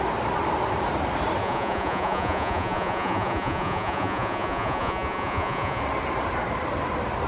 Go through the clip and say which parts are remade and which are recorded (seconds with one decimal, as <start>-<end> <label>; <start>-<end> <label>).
0.0-1.4 recorded; 1.4-5.8 remade; 5.8-7.3 recorded